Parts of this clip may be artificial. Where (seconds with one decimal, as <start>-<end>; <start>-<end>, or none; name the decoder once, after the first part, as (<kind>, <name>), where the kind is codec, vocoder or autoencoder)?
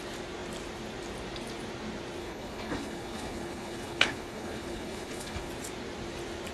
2.2-5.5 (codec, HILCodec)